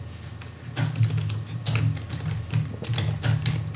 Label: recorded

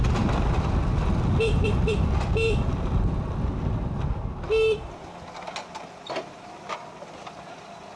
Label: recorded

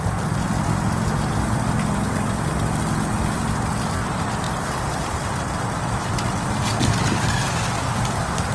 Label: recorded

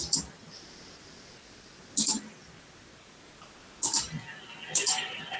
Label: recorded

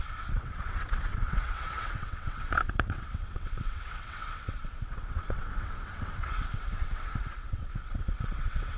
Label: remade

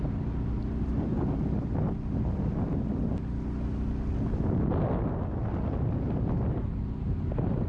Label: recorded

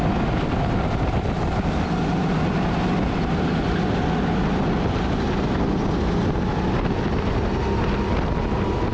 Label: recorded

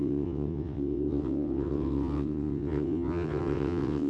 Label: remade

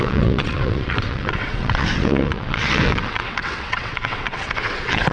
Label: remade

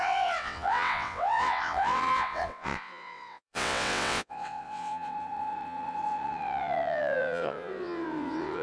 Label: remade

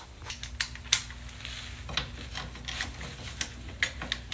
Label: recorded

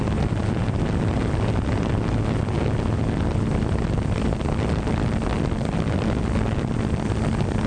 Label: recorded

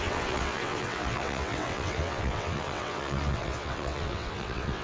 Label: remade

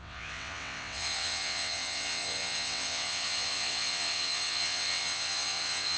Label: remade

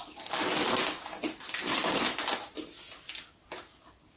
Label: recorded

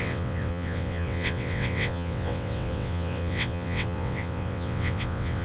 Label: remade